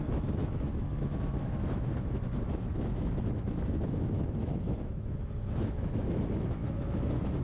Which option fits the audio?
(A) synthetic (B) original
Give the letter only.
A